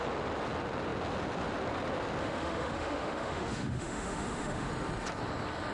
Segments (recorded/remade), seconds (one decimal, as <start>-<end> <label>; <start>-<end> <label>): 0.0-2.2 recorded; 2.2-4.7 remade; 4.7-5.7 recorded